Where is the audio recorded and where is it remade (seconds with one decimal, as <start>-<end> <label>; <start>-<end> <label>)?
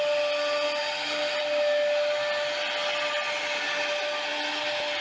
0.0-5.0 recorded